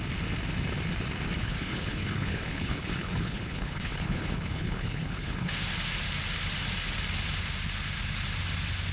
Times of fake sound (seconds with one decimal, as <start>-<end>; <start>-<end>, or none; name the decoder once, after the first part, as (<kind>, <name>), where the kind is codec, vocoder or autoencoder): 1.4-5.5 (codec, HILCodec)